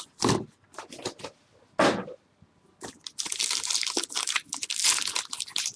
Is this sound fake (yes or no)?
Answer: no